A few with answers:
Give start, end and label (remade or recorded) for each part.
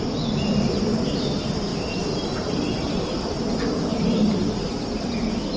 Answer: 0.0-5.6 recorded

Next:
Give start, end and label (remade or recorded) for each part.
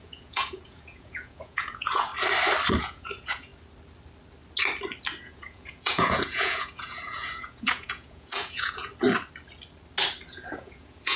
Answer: 0.0-2.1 remade; 2.1-2.8 recorded; 2.8-3.5 remade; 3.5-5.2 recorded; 5.2-8.9 remade; 8.9-10.3 recorded; 10.3-11.2 remade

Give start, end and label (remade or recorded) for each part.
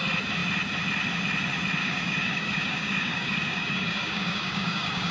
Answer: 0.0-1.8 recorded; 1.8-5.1 remade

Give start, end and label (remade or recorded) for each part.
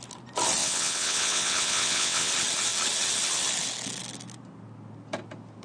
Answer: 0.0-0.6 recorded; 0.6-2.3 remade; 2.3-5.6 recorded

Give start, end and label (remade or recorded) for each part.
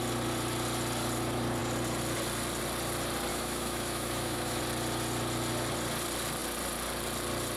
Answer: 0.0-3.3 recorded; 3.3-4.6 remade; 4.6-7.6 recorded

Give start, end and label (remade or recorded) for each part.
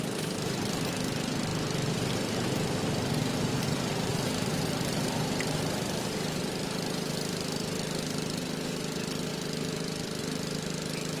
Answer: 0.0-9.3 recorded; 9.3-10.2 remade; 10.2-11.2 recorded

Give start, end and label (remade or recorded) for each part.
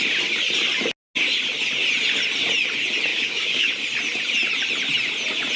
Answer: 0.0-3.1 recorded; 3.1-3.7 remade; 3.7-5.6 recorded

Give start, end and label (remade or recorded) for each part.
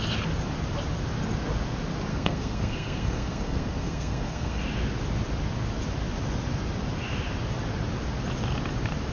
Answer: 0.0-2.1 recorded; 2.1-4.6 remade; 4.6-9.1 recorded